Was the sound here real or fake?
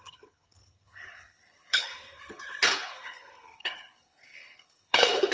fake